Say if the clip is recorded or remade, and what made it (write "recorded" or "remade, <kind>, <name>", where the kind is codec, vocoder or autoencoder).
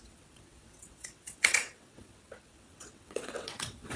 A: remade, vocoder, WaveNeXt